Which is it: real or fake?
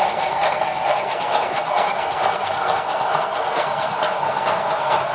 fake